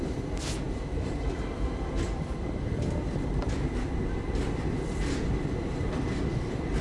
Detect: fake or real fake